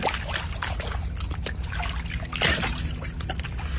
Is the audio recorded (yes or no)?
yes